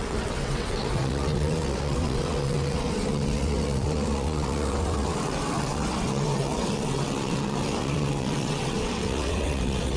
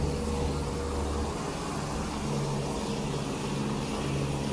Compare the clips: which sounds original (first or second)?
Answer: second